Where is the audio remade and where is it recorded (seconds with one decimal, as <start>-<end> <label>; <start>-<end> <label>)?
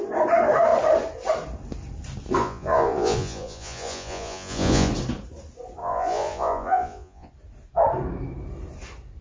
0.0-2.4 recorded; 2.4-4.9 remade; 4.9-5.8 recorded; 5.8-7.3 remade; 7.3-9.2 recorded